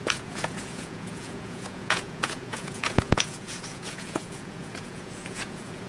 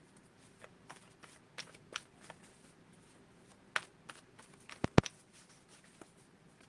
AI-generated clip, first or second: first